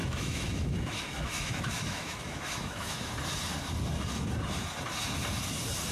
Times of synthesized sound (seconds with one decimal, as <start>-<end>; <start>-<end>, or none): 0.0-3.1